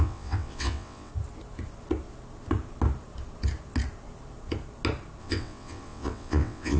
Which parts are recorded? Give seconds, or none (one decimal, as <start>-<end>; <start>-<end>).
1.1-5.2